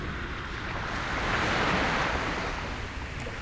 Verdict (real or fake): real